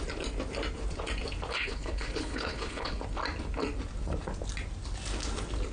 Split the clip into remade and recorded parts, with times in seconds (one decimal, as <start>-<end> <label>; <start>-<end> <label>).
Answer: 0.0-1.5 recorded; 1.5-3.0 remade; 3.0-5.7 recorded